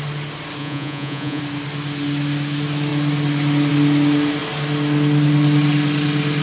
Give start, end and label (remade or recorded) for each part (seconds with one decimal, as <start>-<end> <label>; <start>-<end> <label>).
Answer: 0.0-0.6 recorded; 0.6-1.4 remade; 1.4-6.4 recorded